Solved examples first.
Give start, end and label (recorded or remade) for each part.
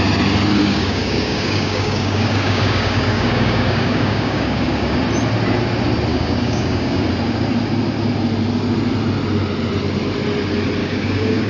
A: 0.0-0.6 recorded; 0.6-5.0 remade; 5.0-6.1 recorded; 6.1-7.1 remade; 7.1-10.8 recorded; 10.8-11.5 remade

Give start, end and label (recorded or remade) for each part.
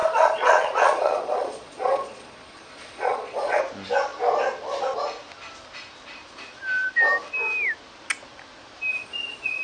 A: 0.0-3.6 remade; 3.6-8.9 recorded; 8.9-9.6 remade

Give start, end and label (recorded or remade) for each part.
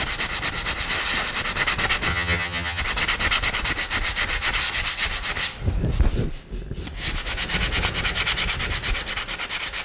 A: 0.0-2.1 recorded; 2.1-2.8 remade; 2.8-9.8 recorded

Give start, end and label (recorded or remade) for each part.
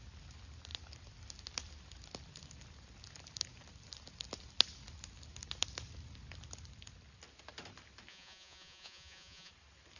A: 0.0-8.1 recorded; 8.1-9.5 remade; 9.5-10.0 recorded